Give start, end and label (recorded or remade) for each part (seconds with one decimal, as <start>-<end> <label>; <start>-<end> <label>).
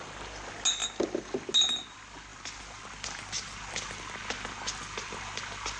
0.0-5.8 recorded